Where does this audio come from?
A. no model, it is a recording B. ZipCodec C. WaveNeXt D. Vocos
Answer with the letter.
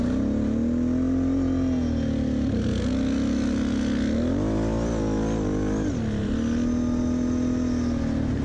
A